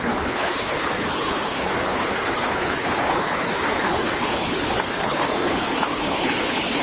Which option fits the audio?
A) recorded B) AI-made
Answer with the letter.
B